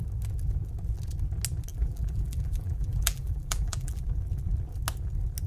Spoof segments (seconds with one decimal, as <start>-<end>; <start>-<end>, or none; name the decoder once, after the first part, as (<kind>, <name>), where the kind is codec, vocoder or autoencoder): 1.7-4.0 (vocoder, BigVGAN v2)